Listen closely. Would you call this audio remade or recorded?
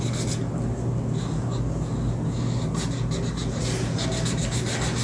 recorded